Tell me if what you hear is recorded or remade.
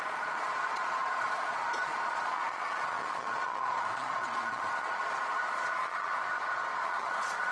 remade